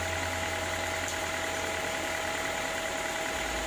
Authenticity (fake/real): real